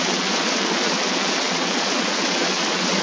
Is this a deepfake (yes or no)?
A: yes